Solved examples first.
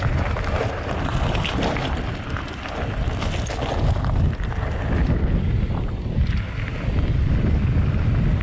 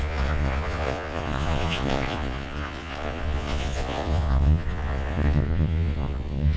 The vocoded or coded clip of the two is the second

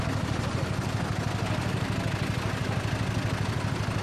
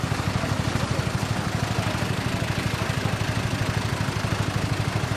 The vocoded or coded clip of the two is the second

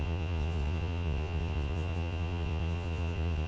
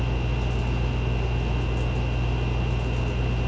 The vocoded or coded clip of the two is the first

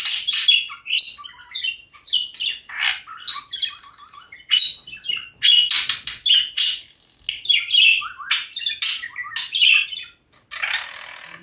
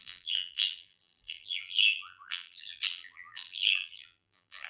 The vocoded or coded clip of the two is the second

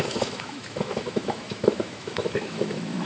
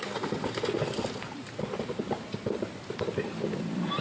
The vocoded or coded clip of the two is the first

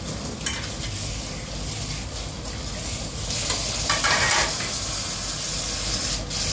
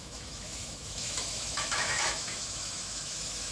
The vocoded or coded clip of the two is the second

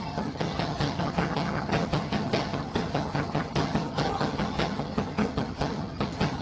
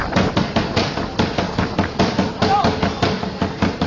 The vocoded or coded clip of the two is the first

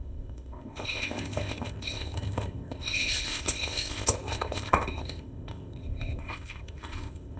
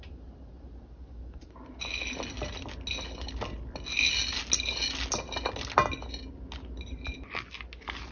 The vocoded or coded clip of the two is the first